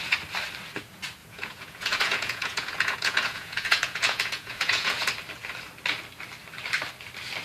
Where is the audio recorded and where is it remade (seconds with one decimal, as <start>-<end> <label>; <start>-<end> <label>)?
0.0-1.2 recorded; 1.2-5.1 remade; 5.1-7.4 recorded